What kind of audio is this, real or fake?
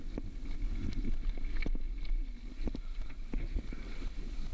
real